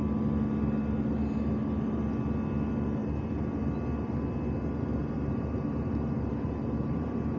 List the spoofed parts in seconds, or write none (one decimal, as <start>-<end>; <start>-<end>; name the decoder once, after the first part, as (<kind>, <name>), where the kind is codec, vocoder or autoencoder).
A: 3.0-3.6 (vocoder, BigVGAN v2); 5.0-7.4